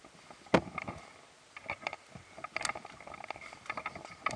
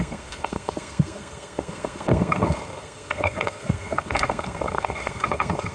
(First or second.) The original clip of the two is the first